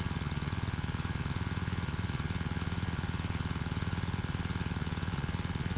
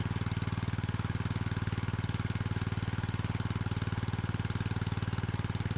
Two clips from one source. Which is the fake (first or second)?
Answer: first